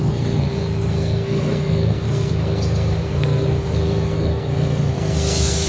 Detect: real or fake fake